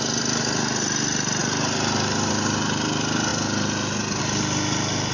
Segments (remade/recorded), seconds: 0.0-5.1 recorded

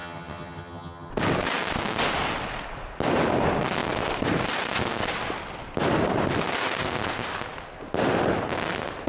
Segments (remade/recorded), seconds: 0.0-1.1 remade; 1.1-9.1 recorded

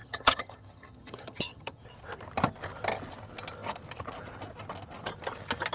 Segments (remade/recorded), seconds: 0.0-1.8 remade; 1.8-5.7 recorded

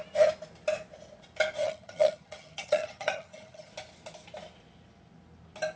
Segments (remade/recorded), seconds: 0.0-1.6 recorded; 1.6-3.7 remade; 3.7-5.8 recorded

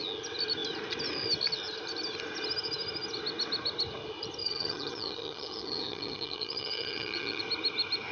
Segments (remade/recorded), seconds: 0.0-4.4 recorded; 4.4-7.4 remade; 7.4-8.1 recorded

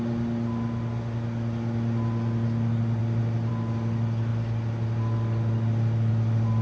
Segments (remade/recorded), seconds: 0.0-6.6 recorded